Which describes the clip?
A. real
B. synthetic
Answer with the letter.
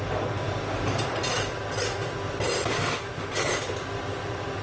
A